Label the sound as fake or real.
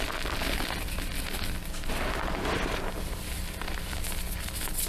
real